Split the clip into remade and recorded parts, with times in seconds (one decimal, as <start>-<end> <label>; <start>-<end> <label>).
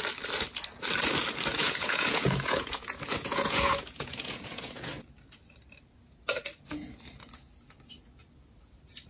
0.0-1.5 recorded; 1.5-4.9 remade; 4.9-9.1 recorded